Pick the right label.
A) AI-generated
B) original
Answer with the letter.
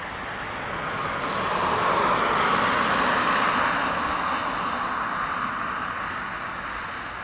B